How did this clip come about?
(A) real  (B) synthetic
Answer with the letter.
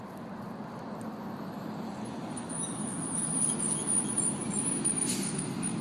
A